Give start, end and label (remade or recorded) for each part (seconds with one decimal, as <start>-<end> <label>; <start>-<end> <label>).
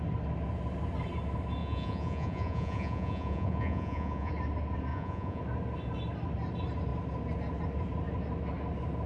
0.0-1.6 recorded; 1.6-4.3 remade; 4.3-4.9 recorded; 4.9-5.4 remade; 5.4-9.1 recorded